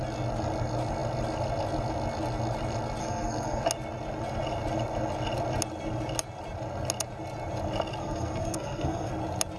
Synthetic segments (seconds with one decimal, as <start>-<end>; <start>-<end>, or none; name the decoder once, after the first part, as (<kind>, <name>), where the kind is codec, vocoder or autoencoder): 3.0-3.6 (codec, SNAC); 8.0-9.1